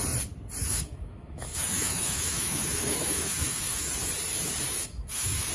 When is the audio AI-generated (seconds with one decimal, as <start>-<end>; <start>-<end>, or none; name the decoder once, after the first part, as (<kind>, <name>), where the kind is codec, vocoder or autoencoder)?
0.6-3.9 (autoencoder, DAC-VAE); 4.7-5.5